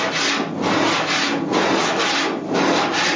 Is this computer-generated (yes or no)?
no